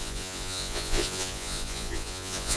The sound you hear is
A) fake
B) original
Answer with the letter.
A